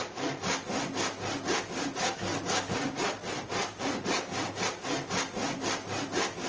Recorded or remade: recorded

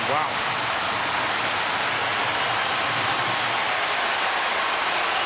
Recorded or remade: recorded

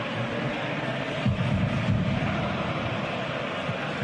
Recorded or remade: recorded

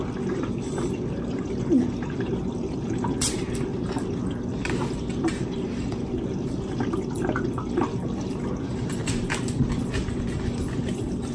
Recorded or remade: recorded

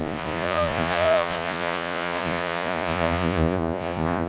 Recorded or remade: remade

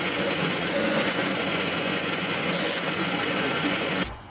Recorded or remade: remade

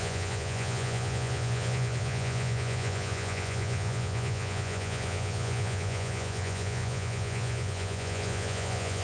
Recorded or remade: remade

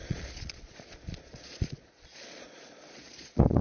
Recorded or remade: remade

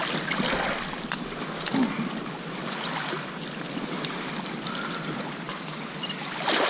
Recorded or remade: recorded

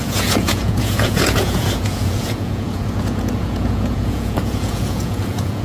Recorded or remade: remade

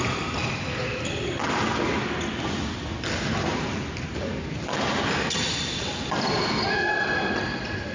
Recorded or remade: recorded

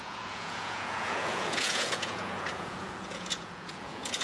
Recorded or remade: remade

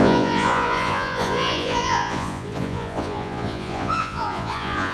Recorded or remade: remade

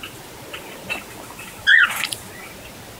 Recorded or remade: recorded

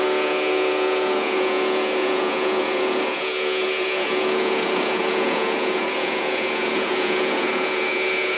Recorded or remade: remade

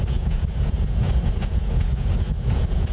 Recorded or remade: remade